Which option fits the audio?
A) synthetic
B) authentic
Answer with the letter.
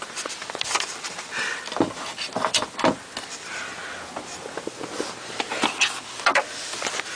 B